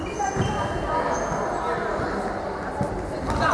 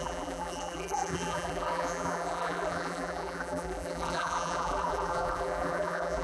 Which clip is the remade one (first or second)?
second